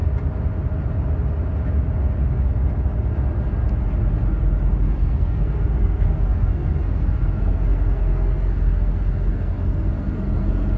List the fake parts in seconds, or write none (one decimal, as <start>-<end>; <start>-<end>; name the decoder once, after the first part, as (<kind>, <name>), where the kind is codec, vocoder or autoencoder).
4.8-10.8 (codec, SNAC)